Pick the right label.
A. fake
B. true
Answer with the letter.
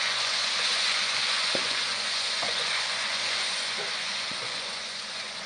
A